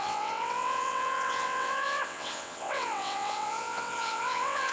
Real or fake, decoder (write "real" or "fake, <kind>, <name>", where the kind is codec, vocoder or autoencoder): fake, vocoder, WaveNeXt